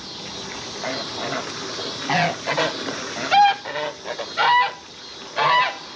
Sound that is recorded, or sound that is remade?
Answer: recorded